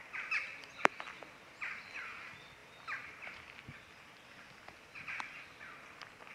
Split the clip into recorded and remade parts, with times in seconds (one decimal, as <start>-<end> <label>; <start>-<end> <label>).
0.0-6.3 recorded